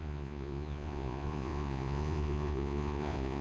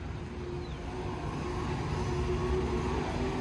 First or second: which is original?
second